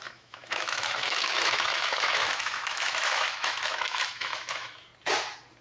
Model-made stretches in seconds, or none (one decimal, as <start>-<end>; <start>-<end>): 0.0-4.9

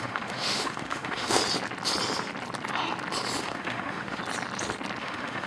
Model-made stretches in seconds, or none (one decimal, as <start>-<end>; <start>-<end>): 0.0-1.4; 3.4-4.2; 5.0-5.5

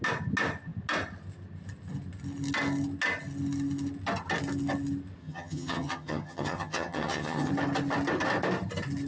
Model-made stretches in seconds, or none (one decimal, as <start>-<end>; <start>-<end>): 5.2-7.5